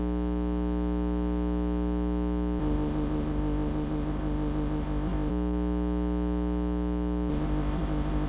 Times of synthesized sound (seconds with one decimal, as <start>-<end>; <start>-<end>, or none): 2.6-5.3; 7.3-8.3